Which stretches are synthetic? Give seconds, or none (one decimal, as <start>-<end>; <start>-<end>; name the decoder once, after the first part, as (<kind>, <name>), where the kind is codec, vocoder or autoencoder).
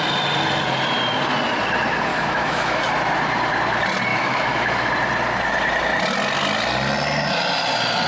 2.1-2.8 (autoencoder, DAC-VAE); 4.1-4.9